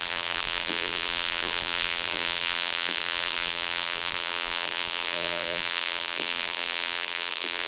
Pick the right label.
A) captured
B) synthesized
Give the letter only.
B